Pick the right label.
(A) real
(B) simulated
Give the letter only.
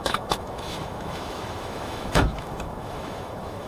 B